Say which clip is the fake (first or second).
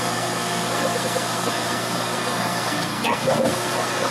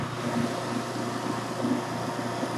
first